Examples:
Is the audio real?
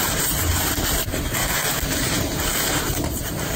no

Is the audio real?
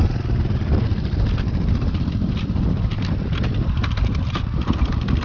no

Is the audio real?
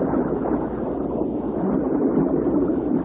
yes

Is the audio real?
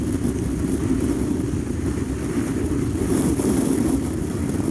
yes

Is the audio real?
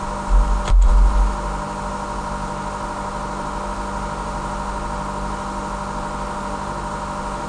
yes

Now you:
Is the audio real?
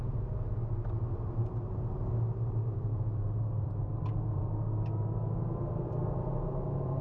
no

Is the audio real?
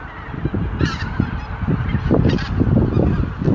no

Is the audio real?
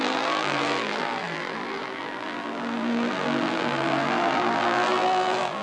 no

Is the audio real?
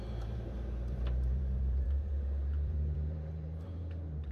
no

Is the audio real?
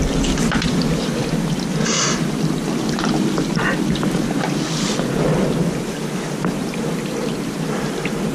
no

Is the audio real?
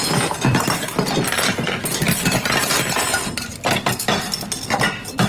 yes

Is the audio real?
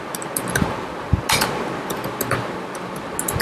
yes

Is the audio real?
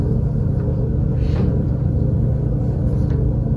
yes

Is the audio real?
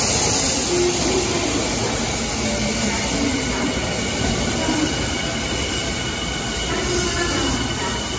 yes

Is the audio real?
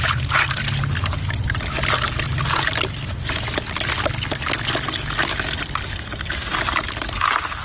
yes